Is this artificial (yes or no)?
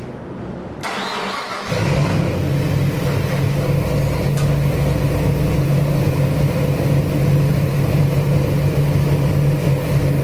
no